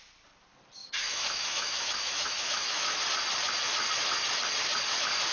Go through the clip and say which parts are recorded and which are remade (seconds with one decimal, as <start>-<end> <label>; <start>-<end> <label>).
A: 0.0-0.8 recorded; 0.8-3.0 remade; 3.0-5.3 recorded